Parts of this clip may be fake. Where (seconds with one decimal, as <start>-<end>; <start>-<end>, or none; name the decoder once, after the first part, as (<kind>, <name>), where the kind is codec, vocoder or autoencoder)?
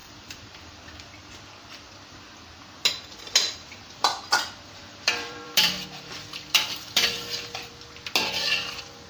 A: 0.0-0.8 (vocoder, BigVGAN v2); 3.4-7.7